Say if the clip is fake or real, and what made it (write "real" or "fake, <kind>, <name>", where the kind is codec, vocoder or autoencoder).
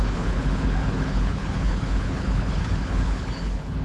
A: fake, codec, HILCodec